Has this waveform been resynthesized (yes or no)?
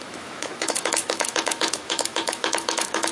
yes